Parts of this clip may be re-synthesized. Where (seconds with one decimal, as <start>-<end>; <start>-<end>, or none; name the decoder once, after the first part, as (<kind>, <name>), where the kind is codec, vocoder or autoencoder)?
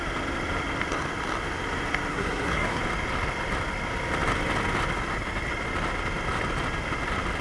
2.1-2.8 (codec, SNAC)